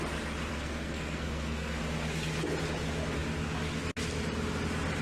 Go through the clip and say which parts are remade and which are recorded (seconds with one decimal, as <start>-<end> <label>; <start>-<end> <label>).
0.0-0.5 recorded; 0.5-1.8 remade; 1.8-5.0 recorded